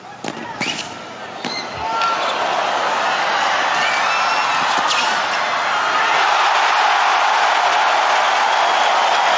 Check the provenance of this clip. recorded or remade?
recorded